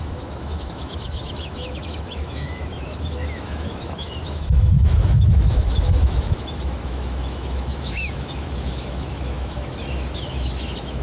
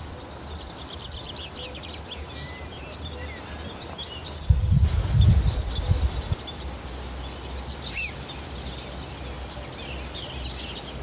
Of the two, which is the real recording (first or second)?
second